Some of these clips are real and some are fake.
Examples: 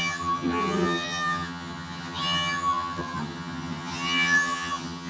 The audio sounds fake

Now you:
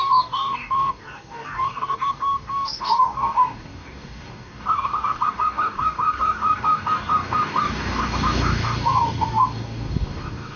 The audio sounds fake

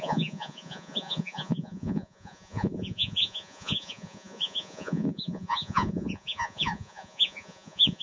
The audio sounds fake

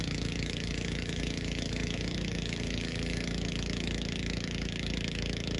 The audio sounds fake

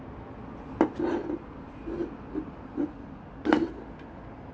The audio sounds real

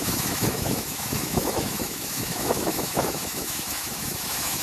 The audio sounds fake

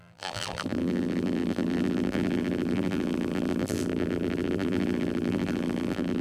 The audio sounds fake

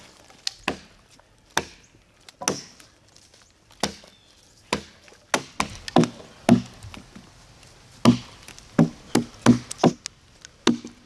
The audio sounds real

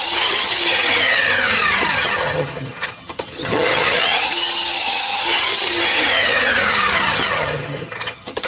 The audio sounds fake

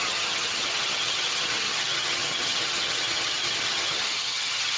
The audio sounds fake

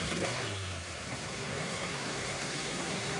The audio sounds fake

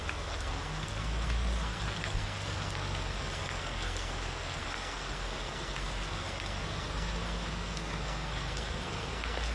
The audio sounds fake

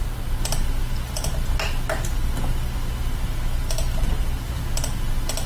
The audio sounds real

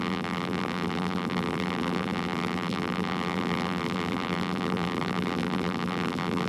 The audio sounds fake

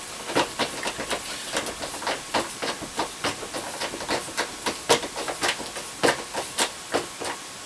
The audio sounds real